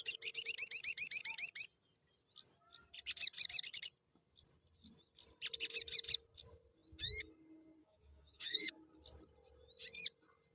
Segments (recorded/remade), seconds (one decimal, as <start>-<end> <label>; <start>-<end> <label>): 0.0-7.8 recorded; 7.8-8.7 remade; 8.7-10.5 recorded